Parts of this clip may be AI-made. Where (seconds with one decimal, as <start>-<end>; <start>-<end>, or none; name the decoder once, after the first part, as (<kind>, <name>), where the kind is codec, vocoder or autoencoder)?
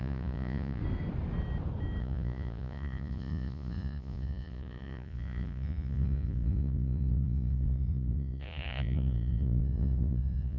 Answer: 0.0-0.8 (vocoder, Vocos); 2.0-10.6